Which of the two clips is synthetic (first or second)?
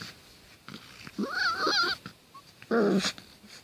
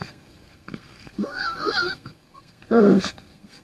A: second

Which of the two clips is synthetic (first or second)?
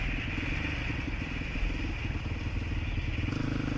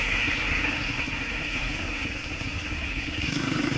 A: second